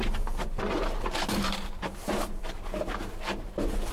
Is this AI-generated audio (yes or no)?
yes